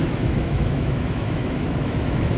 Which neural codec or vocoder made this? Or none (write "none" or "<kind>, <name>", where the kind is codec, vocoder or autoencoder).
autoencoder, DAC-VAE